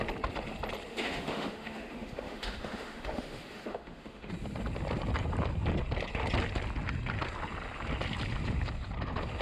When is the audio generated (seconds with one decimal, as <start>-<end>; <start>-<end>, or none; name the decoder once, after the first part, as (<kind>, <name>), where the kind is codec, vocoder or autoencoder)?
0.9-4.3 (autoencoder, DAC-VAE)